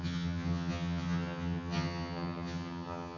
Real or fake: fake